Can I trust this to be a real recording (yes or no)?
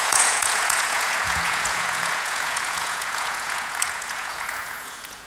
no